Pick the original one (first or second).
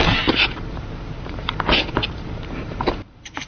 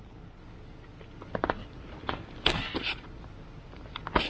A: second